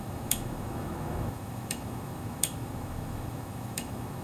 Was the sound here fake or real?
fake